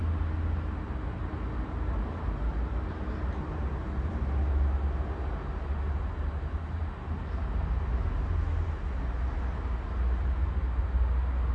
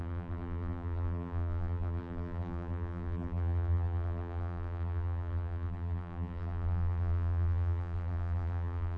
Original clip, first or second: first